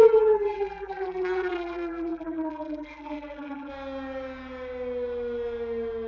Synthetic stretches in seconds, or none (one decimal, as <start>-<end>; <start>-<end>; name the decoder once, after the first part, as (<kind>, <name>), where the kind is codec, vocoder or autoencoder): 0.0-3.7 (vocoder, BigVGAN v2)